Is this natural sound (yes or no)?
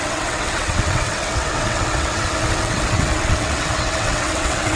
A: no